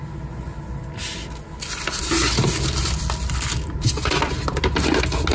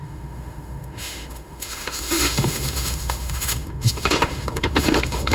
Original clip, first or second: first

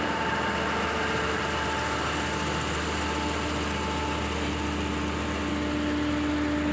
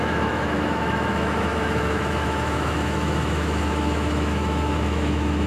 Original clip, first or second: first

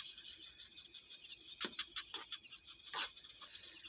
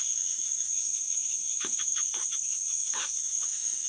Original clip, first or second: first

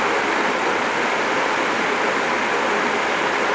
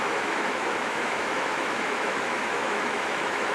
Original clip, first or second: first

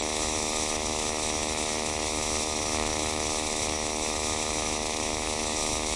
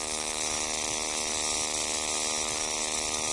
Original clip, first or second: second